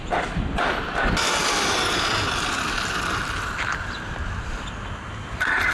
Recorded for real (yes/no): no